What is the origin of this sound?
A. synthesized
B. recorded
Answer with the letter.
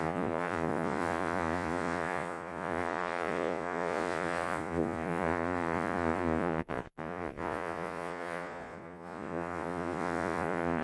A